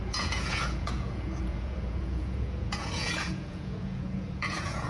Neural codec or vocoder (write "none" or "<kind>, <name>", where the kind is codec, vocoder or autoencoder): vocoder, Vocos